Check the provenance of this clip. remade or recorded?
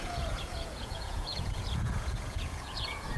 remade